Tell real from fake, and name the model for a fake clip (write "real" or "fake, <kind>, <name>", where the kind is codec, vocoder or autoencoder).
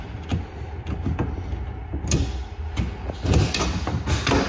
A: real